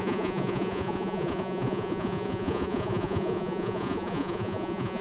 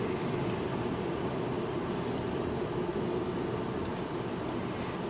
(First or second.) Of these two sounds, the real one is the second